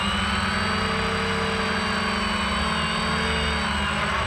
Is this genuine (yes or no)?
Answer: yes